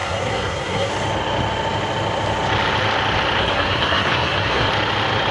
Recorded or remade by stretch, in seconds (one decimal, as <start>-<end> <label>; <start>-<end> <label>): 0.0-0.9 remade; 0.9-3.4 recorded; 3.4-4.7 remade; 4.7-5.3 recorded